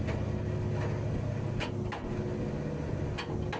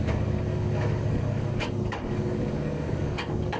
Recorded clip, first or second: first